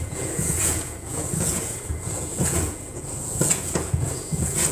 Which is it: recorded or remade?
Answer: remade